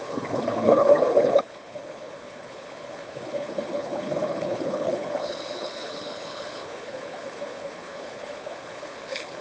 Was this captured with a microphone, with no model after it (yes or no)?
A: no